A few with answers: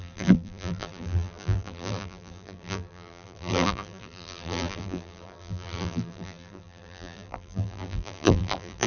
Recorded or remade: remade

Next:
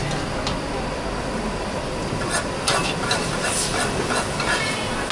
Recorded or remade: recorded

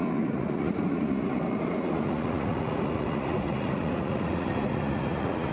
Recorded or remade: remade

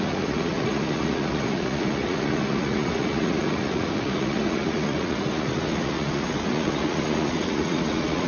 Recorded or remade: remade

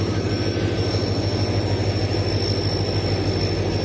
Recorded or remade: recorded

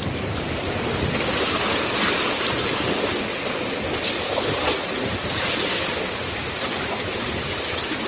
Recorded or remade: recorded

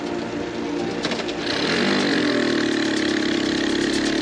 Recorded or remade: recorded